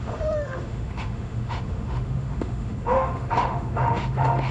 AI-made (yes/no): yes